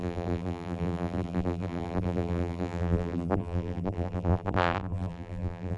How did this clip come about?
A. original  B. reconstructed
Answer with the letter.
B